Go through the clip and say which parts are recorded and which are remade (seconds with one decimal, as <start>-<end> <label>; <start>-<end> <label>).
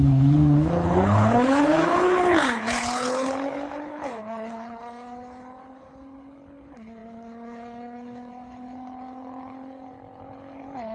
0.0-10.9 remade